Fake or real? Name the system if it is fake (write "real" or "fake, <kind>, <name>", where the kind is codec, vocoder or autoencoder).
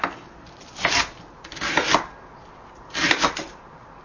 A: real